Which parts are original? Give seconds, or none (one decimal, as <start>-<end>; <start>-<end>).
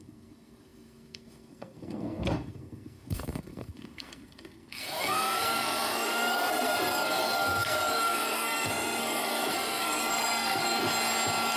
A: 10.8-11.6